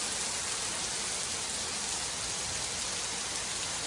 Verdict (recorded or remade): recorded